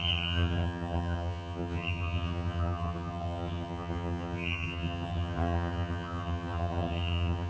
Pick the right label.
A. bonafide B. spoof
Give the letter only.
B